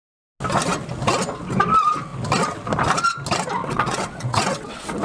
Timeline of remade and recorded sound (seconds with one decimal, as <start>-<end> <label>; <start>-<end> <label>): 0.0-3.6 recorded; 3.6-5.0 remade